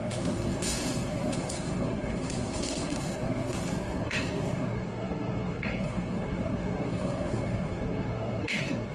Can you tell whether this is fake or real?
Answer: fake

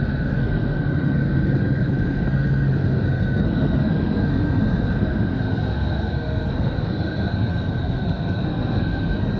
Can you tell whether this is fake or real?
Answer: fake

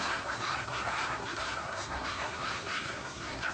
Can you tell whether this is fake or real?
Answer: fake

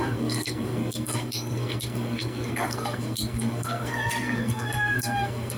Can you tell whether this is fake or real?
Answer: fake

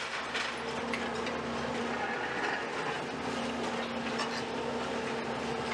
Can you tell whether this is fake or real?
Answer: real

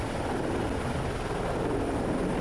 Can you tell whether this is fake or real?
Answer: real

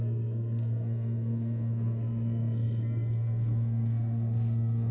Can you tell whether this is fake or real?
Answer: fake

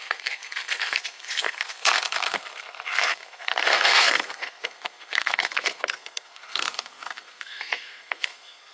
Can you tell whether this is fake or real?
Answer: fake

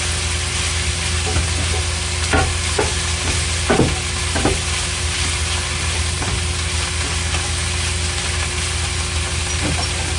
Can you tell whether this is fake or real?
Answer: real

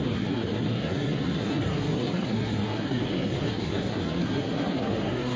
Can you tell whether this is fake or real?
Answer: fake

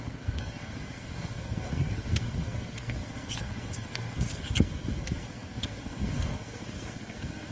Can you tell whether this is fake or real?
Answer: fake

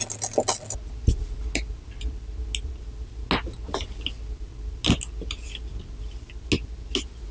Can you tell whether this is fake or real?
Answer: real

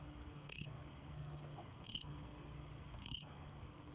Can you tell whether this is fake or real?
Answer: fake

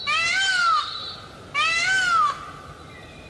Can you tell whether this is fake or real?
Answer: real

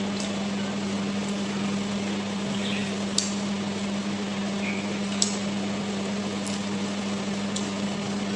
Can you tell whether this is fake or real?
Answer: real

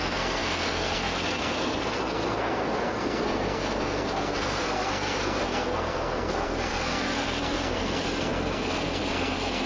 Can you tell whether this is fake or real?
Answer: fake